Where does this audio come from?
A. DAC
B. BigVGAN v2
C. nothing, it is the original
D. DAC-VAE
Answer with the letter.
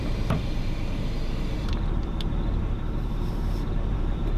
B